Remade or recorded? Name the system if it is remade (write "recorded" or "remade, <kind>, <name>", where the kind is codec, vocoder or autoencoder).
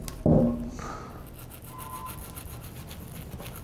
recorded